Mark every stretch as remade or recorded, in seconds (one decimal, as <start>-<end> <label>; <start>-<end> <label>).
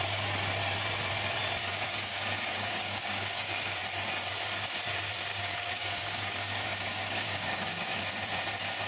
0.0-1.6 recorded; 1.6-3.8 remade; 3.8-5.3 recorded; 5.3-8.0 remade; 8.0-8.9 recorded